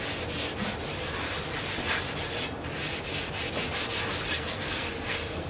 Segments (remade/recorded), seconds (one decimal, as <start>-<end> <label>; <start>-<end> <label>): 0.0-4.3 recorded; 4.3-5.5 remade